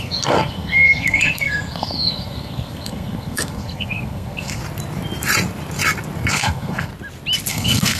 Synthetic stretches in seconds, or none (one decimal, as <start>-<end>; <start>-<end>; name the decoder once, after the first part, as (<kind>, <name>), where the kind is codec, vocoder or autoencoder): 0.0-4.6 (codec, SNAC); 6.3-6.9; 7.5-8.0